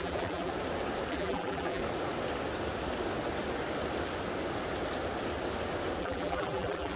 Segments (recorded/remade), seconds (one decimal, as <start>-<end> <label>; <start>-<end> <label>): 0.0-0.5 remade; 0.5-1.1 recorded; 1.1-1.8 remade; 1.8-6.0 recorded; 6.0-7.0 remade